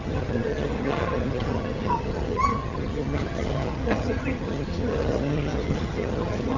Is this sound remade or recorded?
remade